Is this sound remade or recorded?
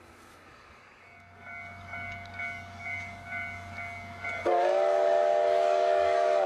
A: remade